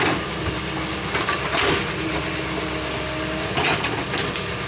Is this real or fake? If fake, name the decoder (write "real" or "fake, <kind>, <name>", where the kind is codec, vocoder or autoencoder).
real